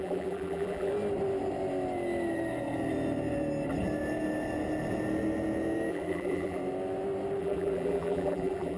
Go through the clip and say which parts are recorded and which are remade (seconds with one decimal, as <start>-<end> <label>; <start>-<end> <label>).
0.0-0.9 remade; 0.9-5.9 recorded; 5.9-6.6 remade; 6.6-7.4 recorded; 7.4-8.8 remade